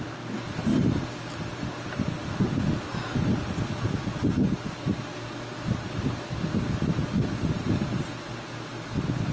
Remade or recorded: recorded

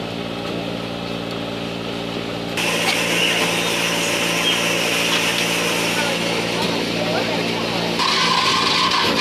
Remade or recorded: recorded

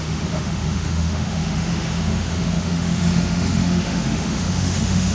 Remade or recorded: remade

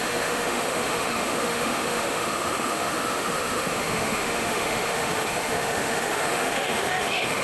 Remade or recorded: remade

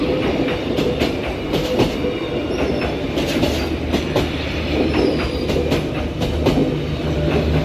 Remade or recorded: recorded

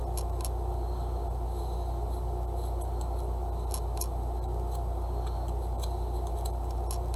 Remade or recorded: recorded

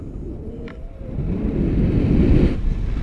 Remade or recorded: recorded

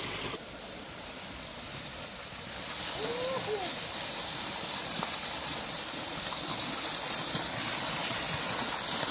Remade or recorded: recorded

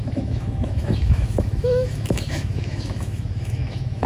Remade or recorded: remade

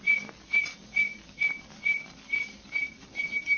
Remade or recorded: recorded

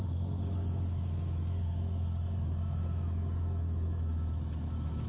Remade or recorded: remade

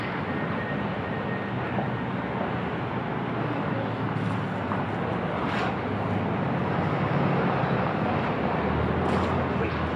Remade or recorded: recorded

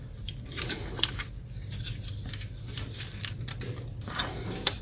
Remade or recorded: recorded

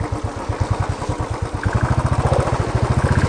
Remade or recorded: recorded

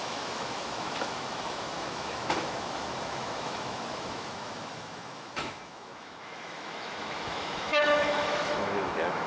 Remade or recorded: remade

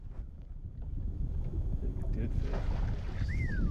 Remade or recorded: recorded